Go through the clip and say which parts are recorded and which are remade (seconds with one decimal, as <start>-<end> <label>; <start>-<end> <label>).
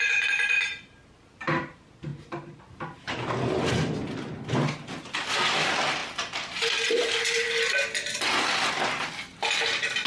0.0-2.1 recorded; 2.1-2.6 remade; 2.6-10.1 recorded